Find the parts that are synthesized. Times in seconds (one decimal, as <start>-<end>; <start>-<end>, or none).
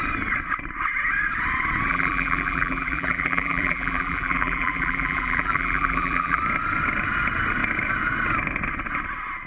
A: 1.9-6.4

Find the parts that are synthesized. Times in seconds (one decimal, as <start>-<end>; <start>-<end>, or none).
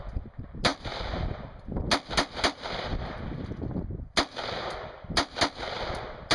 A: none